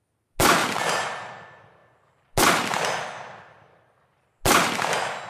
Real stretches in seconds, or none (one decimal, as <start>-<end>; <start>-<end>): 0.0-0.6; 1.3-5.3